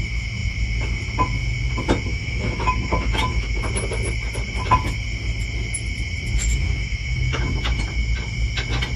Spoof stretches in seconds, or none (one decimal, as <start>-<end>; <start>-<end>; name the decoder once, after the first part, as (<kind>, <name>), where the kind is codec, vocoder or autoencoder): 2.1-3.6 (autoencoder, DAC-VAE); 6.5-7.8